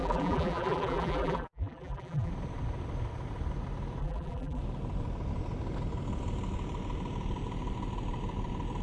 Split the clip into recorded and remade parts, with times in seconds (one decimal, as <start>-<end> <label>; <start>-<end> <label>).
0.0-2.3 remade; 2.3-4.0 recorded; 4.0-4.6 remade; 4.6-8.8 recorded